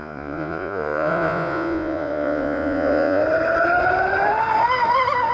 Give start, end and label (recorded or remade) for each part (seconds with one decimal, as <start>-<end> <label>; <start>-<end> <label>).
0.0-3.2 remade; 3.2-5.3 recorded